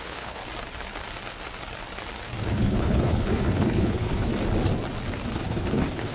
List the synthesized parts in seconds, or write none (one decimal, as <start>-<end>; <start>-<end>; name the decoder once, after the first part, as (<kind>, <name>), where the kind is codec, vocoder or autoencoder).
0.0-0.4 (codec, HILCodec); 2.4-4.3; 5.3-6.1